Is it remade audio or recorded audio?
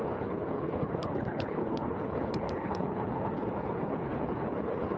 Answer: remade